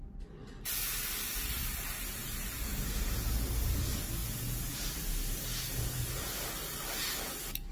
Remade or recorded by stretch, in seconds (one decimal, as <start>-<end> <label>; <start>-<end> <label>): 0.0-2.2 recorded; 2.2-3.5 remade; 3.5-4.2 recorded; 4.2-4.7 remade; 4.7-5.5 recorded; 5.5-6.3 remade; 6.3-7.7 recorded